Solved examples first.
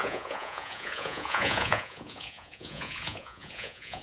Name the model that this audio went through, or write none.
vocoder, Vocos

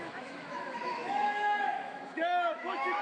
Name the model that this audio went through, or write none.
autoencoder, DAC-VAE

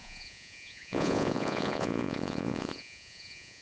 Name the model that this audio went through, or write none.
vocoder, Vocos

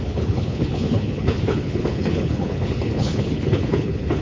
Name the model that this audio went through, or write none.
codec, HILCodec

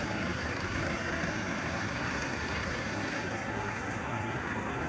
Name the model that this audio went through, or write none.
codec, SNAC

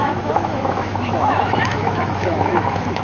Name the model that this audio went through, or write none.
autoencoder, DAC-VAE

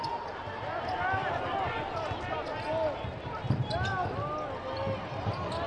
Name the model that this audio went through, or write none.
none